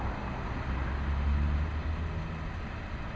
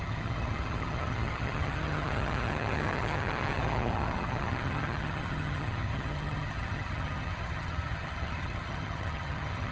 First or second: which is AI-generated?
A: second